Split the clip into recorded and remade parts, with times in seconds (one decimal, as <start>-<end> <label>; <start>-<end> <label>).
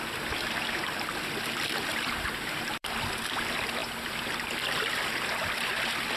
0.0-1.9 recorded; 1.9-3.2 remade; 3.2-6.2 recorded